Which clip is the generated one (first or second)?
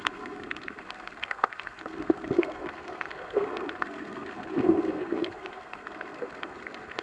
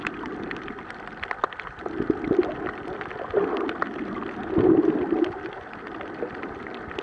first